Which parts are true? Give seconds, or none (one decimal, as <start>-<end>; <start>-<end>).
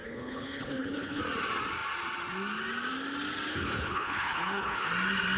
1.2-3.5; 4.9-5.4